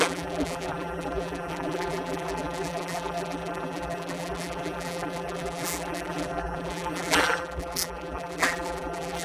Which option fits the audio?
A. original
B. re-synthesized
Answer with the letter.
B